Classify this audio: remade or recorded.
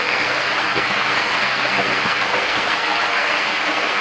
remade